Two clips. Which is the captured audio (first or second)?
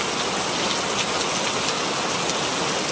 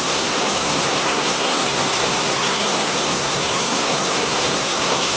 first